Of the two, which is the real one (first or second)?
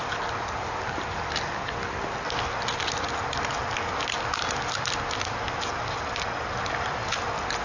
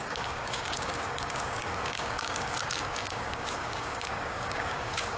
first